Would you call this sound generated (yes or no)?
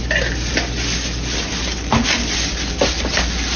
no